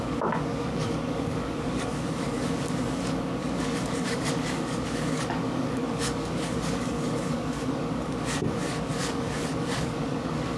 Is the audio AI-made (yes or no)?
yes